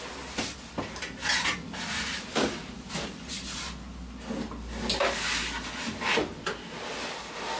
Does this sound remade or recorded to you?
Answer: recorded